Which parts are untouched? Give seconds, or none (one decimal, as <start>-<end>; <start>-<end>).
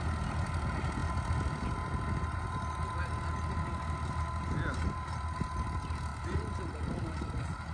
0.0-7.7